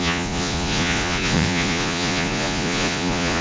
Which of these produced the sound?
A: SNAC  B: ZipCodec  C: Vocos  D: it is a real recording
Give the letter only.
C